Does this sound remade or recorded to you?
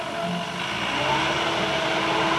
recorded